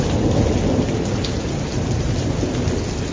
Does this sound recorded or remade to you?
recorded